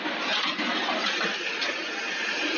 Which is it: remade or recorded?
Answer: recorded